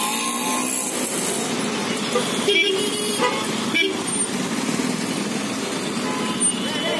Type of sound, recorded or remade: recorded